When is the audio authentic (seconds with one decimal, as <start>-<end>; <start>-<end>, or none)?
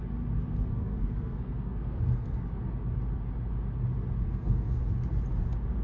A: 0.0-0.7; 2.4-4.2; 4.8-5.8